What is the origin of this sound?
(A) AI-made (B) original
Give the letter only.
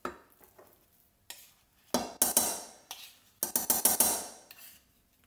B